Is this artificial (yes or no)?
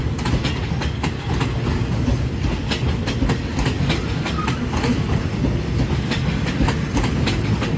no